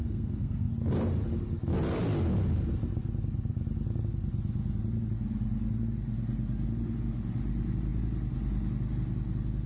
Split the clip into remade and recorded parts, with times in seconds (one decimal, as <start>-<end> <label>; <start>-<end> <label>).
0.0-0.7 remade; 0.7-9.7 recorded